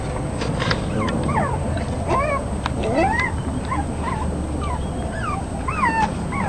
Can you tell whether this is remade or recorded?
recorded